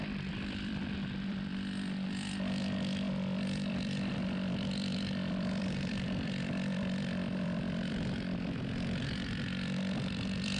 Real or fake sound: fake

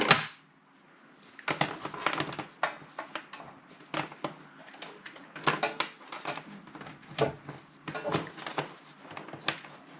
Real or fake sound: real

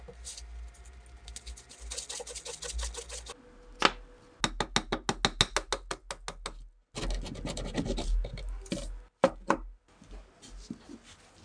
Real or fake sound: real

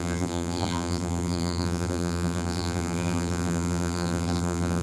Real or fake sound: fake